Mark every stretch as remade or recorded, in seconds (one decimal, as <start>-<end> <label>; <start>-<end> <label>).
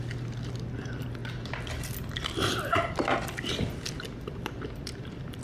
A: 0.0-1.2 remade; 1.2-4.4 recorded; 4.4-5.4 remade